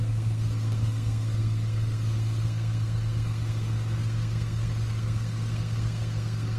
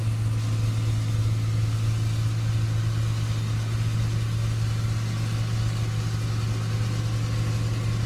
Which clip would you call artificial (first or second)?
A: first